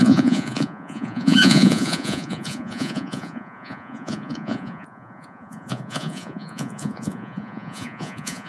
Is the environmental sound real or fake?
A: fake